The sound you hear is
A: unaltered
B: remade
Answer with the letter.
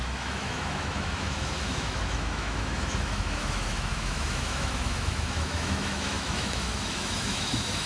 B